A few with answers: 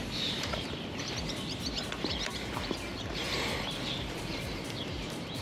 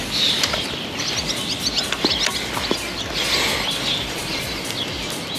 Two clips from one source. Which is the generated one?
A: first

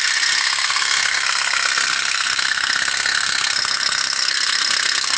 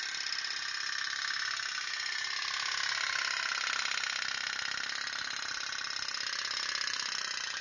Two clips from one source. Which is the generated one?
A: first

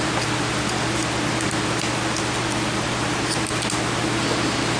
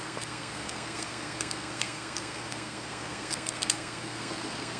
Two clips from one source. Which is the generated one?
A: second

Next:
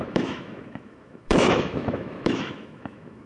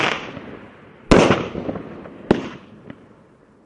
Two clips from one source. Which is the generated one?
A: first